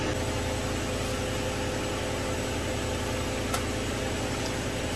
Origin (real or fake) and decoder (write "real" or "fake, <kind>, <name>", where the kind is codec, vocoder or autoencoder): real